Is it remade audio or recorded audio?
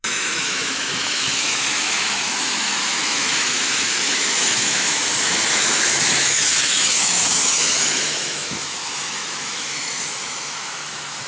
remade